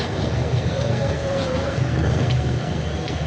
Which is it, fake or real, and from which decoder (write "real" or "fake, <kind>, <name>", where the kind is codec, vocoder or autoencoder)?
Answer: fake, codec, SNAC